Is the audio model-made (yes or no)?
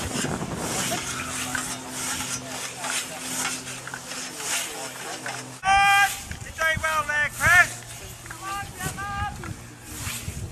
no